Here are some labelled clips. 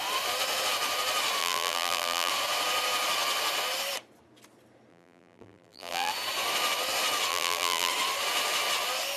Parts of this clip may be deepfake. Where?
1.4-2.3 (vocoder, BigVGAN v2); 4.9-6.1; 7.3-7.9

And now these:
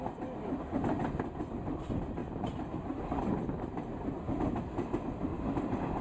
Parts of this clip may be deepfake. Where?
2.2-4.6 (vocoder, BigVGAN v2)

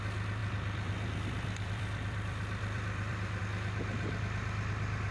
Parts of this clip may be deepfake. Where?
0.4-3.4 (vocoder, BigVGAN v2)